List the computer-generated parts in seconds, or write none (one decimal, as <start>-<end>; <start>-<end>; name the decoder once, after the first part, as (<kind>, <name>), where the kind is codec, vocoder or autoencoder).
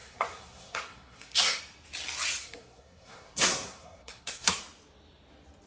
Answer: 0.0-1.6 (codec, SNAC); 2.4-4.6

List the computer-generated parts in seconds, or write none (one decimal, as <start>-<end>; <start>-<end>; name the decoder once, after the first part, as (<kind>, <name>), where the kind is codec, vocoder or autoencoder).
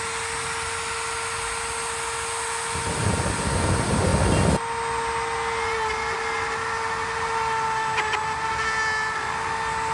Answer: none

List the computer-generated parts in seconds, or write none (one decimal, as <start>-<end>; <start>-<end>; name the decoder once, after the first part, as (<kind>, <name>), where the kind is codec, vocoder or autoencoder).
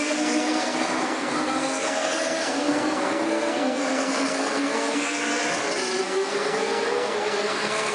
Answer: 0.0-5.3 (codec, SNAC); 6.0-7.9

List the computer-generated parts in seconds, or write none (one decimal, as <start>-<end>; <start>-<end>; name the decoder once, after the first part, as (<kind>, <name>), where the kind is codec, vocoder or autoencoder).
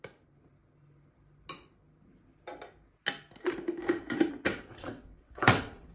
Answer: 4.5-5.9 (vocoder, WaveNeXt)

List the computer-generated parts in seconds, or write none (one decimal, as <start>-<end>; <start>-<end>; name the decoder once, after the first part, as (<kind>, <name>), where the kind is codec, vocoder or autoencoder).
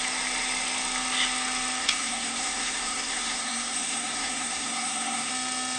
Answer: 1.8-5.3 (codec, SNAC)